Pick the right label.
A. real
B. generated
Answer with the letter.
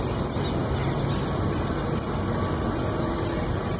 A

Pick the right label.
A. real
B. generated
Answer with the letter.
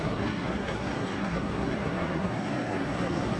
B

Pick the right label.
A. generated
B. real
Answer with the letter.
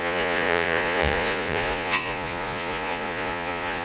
A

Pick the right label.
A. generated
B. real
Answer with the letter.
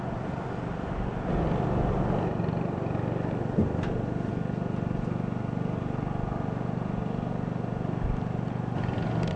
B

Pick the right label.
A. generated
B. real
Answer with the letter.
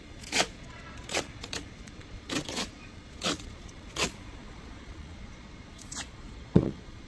A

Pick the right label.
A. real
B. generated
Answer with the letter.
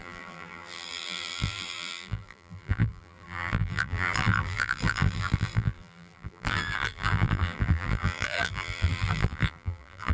B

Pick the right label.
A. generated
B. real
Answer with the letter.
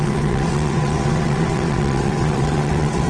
A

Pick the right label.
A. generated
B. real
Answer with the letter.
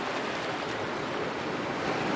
B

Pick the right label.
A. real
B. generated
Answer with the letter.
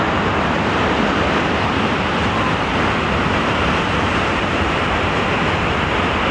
B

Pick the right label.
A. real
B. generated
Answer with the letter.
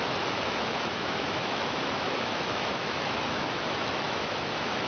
B